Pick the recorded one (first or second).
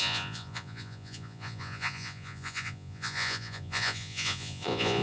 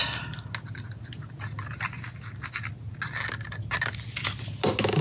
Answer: second